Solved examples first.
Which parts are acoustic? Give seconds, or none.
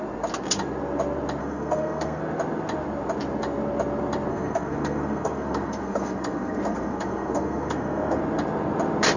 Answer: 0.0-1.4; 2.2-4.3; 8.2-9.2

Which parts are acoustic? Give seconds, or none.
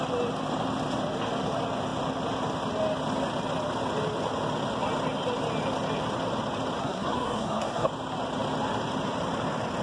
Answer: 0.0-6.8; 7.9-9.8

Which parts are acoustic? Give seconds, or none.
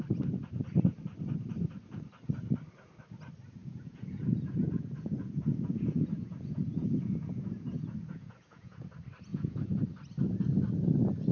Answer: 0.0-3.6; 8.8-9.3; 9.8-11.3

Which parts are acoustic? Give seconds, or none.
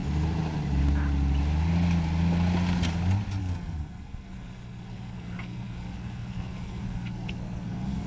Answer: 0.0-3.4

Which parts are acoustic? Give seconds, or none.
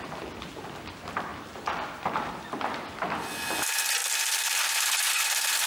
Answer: 0.0-5.7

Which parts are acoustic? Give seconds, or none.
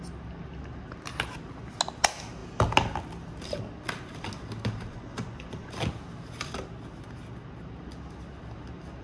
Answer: 0.0-4.9; 5.7-9.0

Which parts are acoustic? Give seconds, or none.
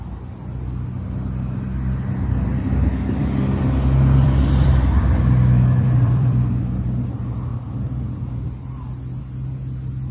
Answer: 0.0-2.5; 6.6-10.1